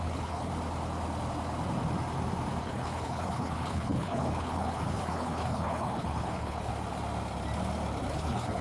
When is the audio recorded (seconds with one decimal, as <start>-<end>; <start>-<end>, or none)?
0.5-2.6; 6.7-8.1